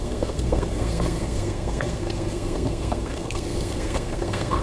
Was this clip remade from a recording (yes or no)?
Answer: yes